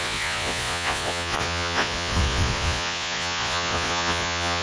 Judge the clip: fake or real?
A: fake